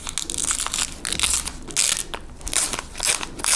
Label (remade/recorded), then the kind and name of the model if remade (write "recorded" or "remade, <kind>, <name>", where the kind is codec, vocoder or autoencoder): recorded